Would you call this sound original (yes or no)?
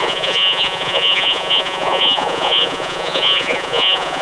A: no